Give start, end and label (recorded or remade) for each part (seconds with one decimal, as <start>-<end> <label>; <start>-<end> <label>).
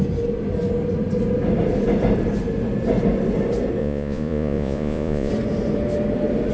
0.0-3.8 recorded; 3.8-5.3 remade; 5.3-6.5 recorded